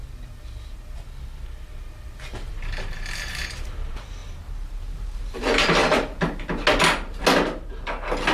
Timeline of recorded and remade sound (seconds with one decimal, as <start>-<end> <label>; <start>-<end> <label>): 0.0-2.5 recorded; 2.5-5.8 remade; 5.8-8.3 recorded